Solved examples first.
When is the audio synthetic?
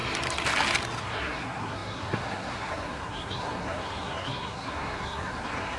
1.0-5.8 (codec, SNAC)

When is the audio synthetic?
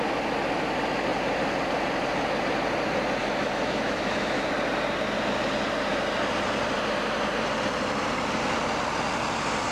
3.2-4.5 (autoencoder, DAC-VAE)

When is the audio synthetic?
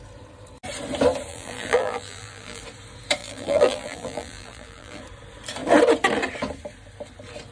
1.3-2.6 (vocoder, BigVGAN v2); 3.2-5.0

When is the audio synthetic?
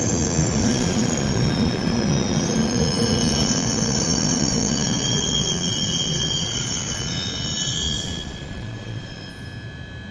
0.0-9.3 (vocoder, Vocos)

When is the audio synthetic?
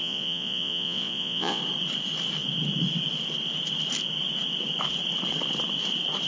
0.0-1.6 (vocoder, Vocos)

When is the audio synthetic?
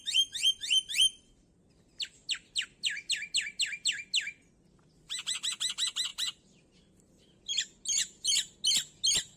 6.1-6.8 (vocoder, BigVGAN v2); 8.0-8.5